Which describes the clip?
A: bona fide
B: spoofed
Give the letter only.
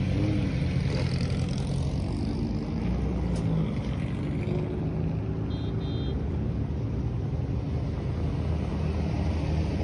A